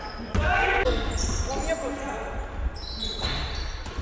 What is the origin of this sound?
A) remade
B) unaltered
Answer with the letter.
B